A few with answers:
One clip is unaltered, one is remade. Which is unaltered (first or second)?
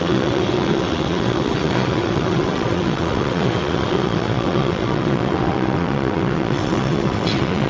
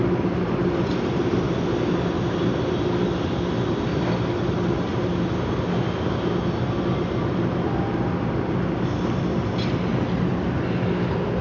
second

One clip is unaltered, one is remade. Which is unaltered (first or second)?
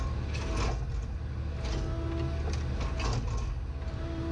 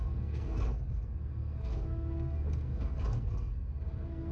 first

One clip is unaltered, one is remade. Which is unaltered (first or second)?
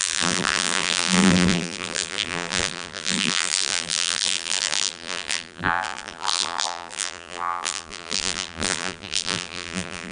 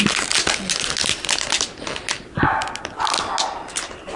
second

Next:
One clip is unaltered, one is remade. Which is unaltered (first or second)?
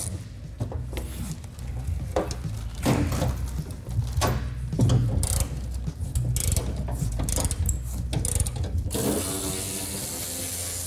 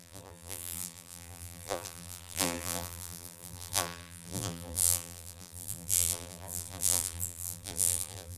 first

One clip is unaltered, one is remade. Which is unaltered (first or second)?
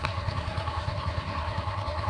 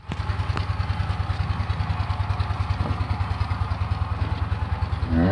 second